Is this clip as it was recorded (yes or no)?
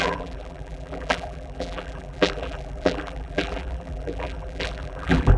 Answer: no